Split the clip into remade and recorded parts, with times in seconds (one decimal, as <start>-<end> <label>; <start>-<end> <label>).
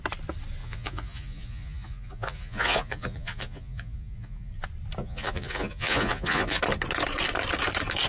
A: 0.0-0.6 recorded; 0.6-4.5 remade; 4.5-5.0 recorded; 5.0-6.6 remade; 6.6-8.1 recorded